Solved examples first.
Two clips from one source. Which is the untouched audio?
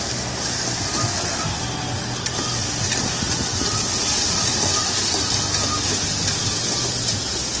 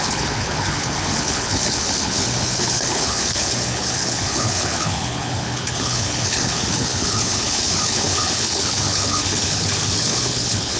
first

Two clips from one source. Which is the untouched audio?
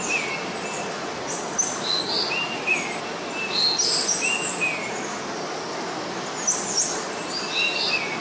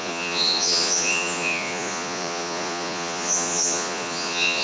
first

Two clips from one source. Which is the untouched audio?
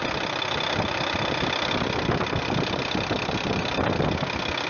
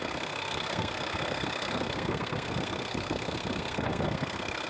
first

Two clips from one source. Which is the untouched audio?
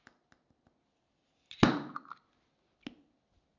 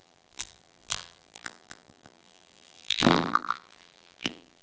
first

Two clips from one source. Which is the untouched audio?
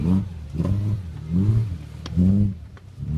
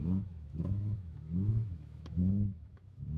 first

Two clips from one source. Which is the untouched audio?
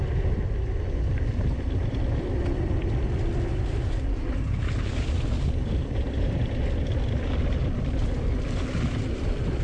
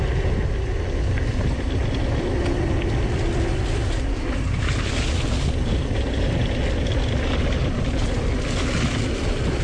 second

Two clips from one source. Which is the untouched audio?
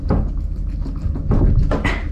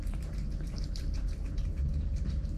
first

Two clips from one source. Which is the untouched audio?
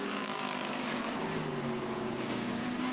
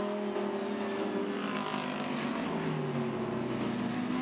second